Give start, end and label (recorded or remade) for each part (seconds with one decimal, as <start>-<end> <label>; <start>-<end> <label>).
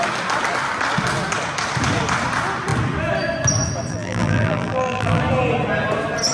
0.0-3.9 recorded; 3.9-5.2 remade; 5.2-6.3 recorded